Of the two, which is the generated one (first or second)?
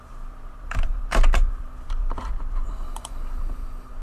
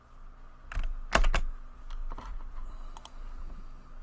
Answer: first